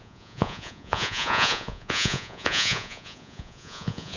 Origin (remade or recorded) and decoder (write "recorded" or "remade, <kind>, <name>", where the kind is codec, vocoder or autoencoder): remade, vocoder, Vocos